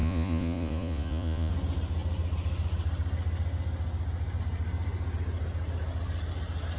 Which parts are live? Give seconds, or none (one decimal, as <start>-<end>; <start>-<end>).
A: 1.5-6.8